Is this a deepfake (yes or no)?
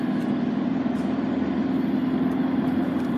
yes